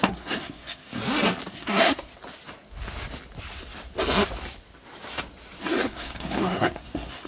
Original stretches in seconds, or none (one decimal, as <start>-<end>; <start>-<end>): 1.0-1.5; 2.1-5.6